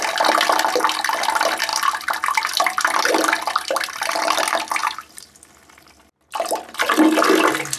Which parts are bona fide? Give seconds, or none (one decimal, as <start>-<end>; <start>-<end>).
0.0-4.8; 5.3-7.8